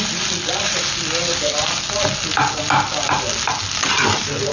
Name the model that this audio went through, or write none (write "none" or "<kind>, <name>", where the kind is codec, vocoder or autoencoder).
none